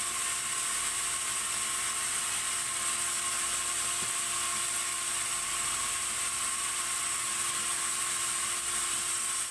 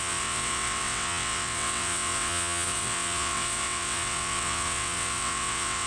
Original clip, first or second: first